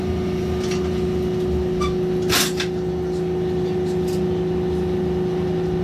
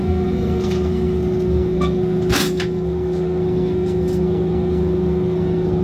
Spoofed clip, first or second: second